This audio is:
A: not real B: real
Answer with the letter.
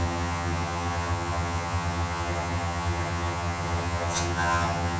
A